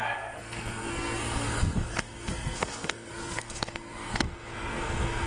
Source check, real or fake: fake